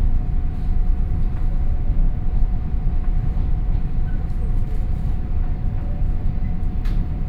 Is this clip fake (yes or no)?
yes